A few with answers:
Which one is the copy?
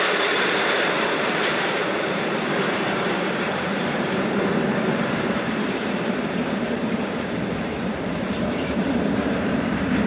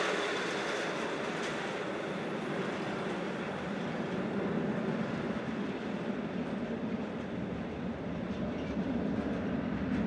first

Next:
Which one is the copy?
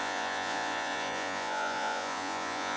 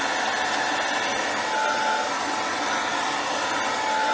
first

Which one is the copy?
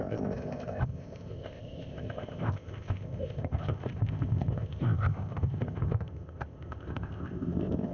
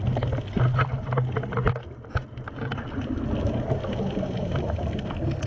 first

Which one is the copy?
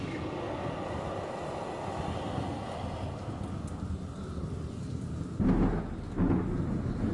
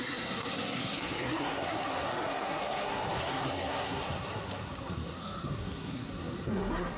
second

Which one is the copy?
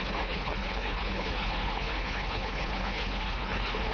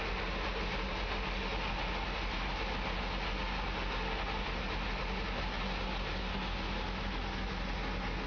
first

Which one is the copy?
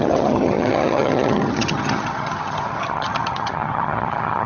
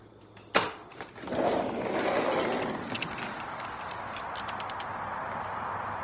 first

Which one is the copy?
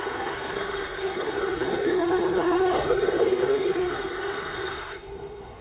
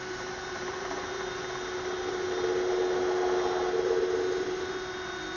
first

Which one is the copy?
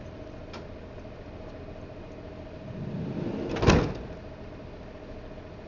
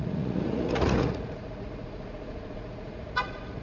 second